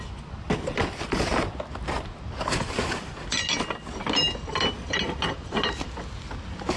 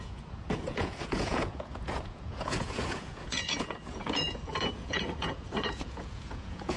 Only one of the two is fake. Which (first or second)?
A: second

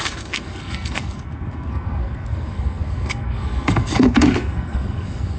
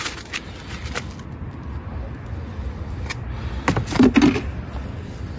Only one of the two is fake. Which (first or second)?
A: first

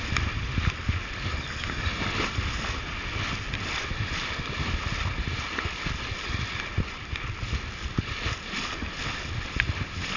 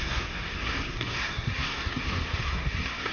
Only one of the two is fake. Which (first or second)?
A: second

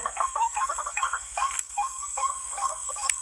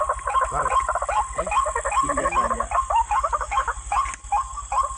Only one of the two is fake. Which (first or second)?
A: first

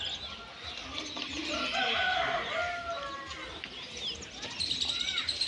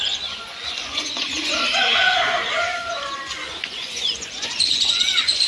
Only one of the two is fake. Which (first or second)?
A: second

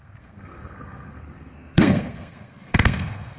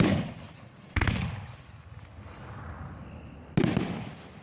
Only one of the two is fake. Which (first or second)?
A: first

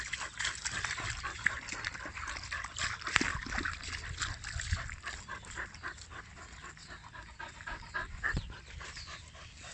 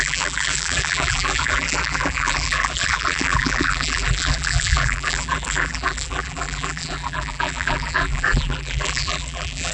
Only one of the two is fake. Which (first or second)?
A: second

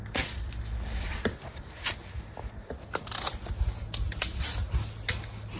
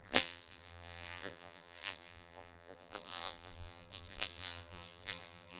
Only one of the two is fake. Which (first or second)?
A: second